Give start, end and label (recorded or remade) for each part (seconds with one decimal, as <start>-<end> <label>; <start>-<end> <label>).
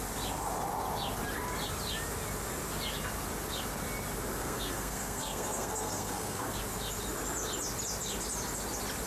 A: 0.0-4.4 recorded; 4.4-6.6 remade; 6.6-9.1 recorded